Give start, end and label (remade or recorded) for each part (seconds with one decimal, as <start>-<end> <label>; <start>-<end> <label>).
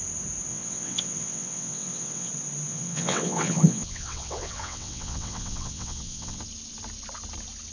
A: 0.0-0.5 recorded; 0.5-2.3 remade; 2.3-2.7 recorded; 2.7-6.4 remade; 6.4-7.7 recorded